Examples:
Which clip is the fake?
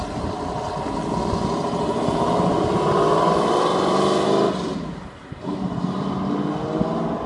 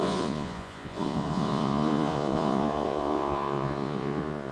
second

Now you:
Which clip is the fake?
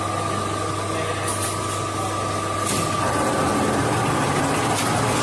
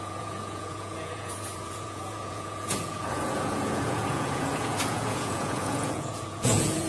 second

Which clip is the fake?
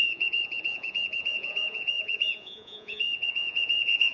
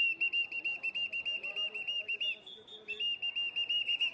first